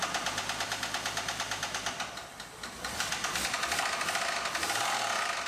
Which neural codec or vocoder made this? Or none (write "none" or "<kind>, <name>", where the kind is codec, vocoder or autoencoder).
none